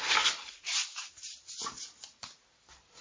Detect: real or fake real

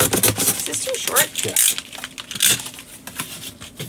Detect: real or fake real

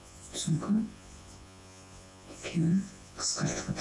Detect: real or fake fake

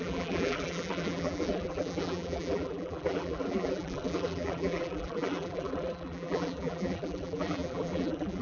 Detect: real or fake fake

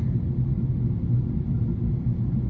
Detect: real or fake real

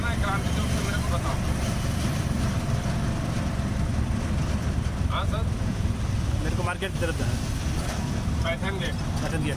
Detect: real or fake real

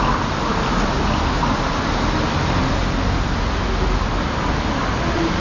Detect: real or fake real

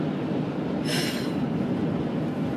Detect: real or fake real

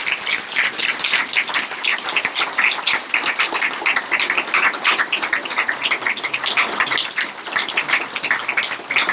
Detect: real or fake real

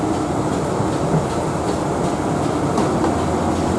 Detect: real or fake real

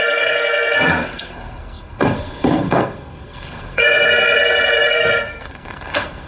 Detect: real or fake fake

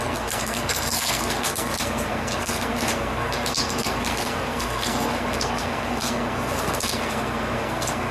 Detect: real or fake fake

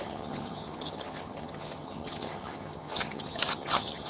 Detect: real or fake fake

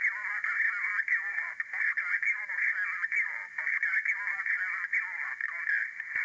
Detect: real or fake real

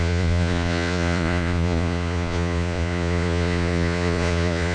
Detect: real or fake fake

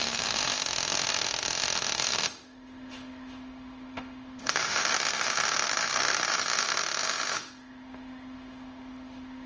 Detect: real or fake fake